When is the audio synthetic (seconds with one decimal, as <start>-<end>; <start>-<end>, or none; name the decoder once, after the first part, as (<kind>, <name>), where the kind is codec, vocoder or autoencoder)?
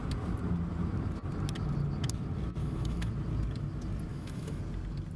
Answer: 2.6-3.1 (autoencoder, DAC-VAE); 4.1-4.6